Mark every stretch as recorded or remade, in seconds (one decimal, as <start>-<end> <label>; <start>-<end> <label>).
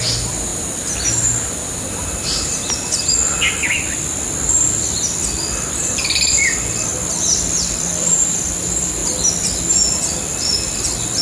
0.0-0.5 remade; 0.5-5.7 recorded; 5.7-6.9 remade; 6.9-7.4 recorded; 7.4-9.0 remade; 9.0-9.5 recorded; 9.5-11.2 remade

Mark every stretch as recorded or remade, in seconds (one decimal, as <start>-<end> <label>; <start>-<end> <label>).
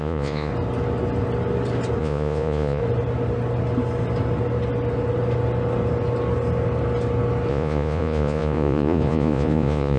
0.0-0.5 remade; 0.5-2.0 recorded; 2.0-2.8 remade; 2.8-7.5 recorded; 7.5-10.0 remade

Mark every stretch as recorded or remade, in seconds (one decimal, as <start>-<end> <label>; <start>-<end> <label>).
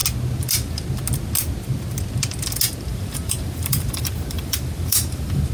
0.0-2.9 recorded; 2.9-5.5 remade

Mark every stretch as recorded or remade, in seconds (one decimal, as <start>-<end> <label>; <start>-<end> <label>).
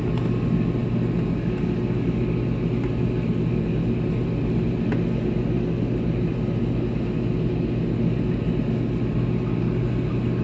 0.0-10.4 recorded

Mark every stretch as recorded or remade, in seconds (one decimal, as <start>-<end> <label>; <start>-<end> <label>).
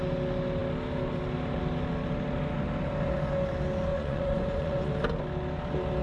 0.0-3.9 recorded; 3.9-4.9 remade; 4.9-6.0 recorded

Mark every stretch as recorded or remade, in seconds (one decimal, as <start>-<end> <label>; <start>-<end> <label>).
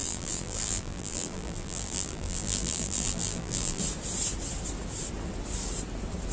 0.0-3.8 remade; 3.8-6.3 recorded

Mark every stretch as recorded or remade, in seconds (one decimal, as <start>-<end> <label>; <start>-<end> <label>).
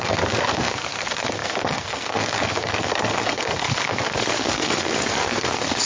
0.0-5.9 remade